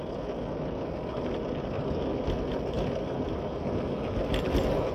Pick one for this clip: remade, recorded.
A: recorded